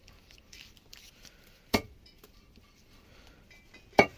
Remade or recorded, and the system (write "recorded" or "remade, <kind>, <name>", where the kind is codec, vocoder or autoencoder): remade, vocoder, BigVGAN v2